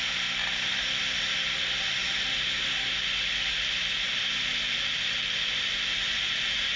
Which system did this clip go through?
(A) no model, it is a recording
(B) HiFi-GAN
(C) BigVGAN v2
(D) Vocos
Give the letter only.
A